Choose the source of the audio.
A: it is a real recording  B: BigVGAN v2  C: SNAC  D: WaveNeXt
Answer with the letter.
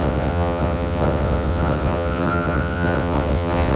D